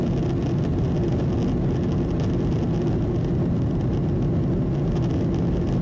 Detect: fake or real real